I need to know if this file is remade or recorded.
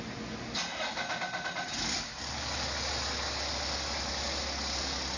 recorded